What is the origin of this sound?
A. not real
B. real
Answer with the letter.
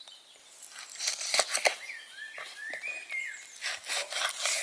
B